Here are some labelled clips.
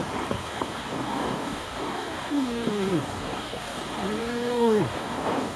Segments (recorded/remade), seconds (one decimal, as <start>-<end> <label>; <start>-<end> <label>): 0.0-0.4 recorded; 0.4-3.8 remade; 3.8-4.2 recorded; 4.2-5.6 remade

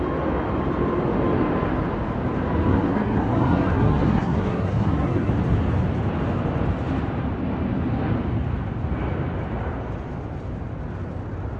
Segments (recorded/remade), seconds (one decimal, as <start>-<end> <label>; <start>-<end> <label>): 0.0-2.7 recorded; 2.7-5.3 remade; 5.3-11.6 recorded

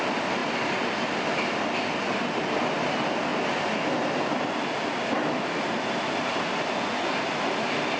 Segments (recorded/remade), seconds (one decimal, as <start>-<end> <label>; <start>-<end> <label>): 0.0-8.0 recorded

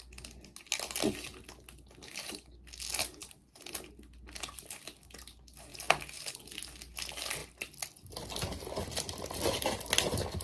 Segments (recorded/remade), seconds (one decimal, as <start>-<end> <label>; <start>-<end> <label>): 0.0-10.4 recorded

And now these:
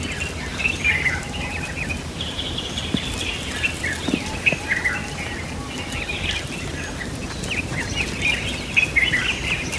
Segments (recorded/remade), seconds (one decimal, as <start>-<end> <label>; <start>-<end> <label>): 0.0-0.5 recorded; 0.5-2.8 remade; 2.8-9.8 recorded

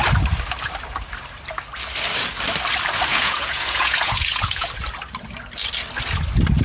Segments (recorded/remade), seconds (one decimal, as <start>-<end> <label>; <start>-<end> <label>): 0.0-3.1 recorded; 3.1-4.7 remade; 4.7-6.6 recorded

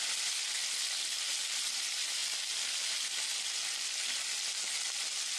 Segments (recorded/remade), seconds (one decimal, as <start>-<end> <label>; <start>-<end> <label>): 0.0-5.4 recorded